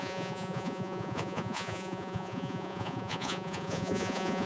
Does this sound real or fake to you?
fake